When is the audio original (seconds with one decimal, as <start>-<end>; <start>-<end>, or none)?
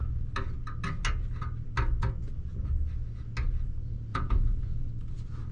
0.0-4.1; 4.9-5.5